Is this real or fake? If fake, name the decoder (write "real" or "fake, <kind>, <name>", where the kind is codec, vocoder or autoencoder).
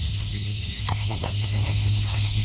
fake, codec, SNAC